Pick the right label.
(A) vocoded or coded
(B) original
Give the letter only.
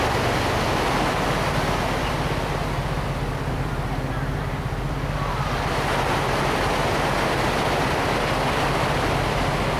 B